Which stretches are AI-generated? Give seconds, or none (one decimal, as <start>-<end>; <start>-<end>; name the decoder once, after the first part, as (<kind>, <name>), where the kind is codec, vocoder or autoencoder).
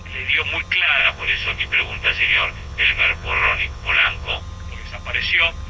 1.0-4.4 (vocoder, WaveNeXt)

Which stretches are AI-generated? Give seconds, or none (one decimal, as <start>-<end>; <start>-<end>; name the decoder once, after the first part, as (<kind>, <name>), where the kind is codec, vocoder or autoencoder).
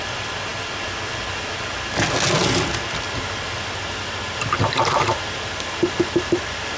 none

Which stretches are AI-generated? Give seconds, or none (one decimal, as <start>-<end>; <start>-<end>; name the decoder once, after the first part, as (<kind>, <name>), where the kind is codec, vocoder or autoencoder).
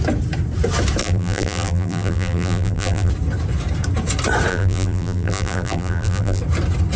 1.0-3.1 (vocoder, BigVGAN v2); 4.5-6.4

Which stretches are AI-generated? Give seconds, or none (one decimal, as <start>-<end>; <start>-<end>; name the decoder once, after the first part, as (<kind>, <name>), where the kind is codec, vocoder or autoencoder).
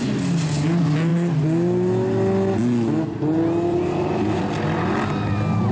none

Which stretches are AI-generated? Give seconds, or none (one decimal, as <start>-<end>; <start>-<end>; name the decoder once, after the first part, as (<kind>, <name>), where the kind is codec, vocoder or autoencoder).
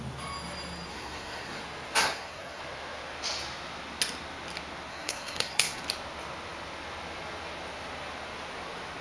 0.9-1.6 (codec, SNAC); 2.0-2.6; 4.9-5.8